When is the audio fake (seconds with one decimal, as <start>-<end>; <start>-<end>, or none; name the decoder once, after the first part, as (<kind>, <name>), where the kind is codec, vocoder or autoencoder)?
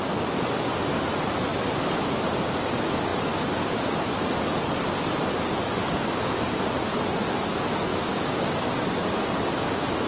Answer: 5.8-6.6 (codec, DAC); 7.9-9.3